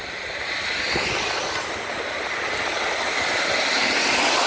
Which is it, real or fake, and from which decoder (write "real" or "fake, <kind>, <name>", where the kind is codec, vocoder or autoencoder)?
real